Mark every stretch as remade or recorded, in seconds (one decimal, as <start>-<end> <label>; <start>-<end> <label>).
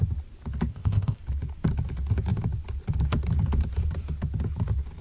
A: 0.0-0.7 recorded; 0.7-1.2 remade; 1.2-5.0 recorded